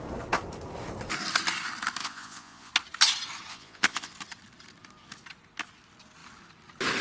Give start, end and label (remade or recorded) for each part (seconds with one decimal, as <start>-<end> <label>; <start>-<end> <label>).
0.0-2.0 recorded; 2.0-2.7 remade; 2.7-3.5 recorded; 3.5-4.1 remade; 4.1-7.0 recorded